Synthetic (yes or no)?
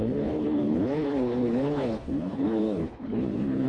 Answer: yes